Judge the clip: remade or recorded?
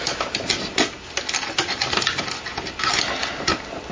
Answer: recorded